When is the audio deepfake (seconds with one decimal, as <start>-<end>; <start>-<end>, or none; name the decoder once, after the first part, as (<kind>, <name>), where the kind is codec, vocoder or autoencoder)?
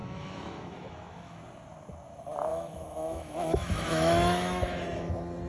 0.0-1.4 (autoencoder, DAC-VAE); 2.5-5.1